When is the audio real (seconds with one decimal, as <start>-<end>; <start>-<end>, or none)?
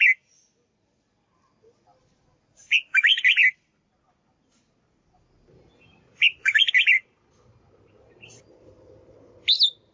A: 0.0-9.9